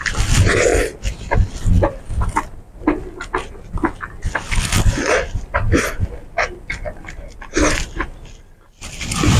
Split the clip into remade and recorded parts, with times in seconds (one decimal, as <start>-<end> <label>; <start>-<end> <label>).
0.0-9.4 recorded